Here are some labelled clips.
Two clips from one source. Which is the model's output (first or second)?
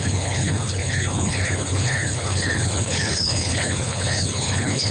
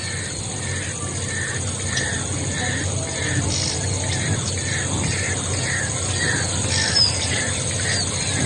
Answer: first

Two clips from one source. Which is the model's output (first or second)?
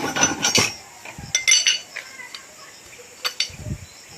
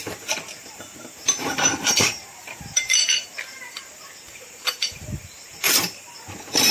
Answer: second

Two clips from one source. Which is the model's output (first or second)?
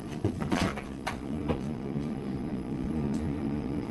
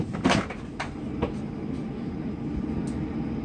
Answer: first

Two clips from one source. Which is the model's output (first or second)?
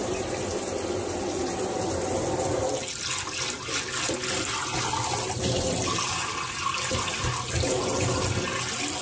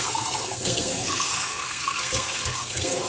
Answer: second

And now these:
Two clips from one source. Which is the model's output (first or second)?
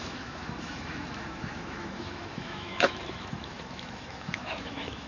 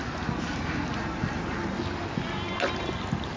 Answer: first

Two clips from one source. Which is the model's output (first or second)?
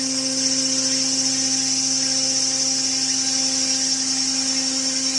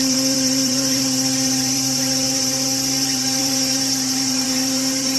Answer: second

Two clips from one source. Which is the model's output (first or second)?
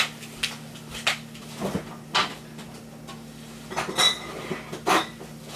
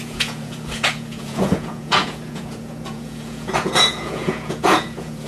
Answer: second